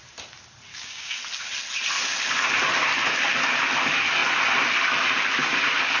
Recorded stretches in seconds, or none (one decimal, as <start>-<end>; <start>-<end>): 0.0-0.7; 1.2-6.0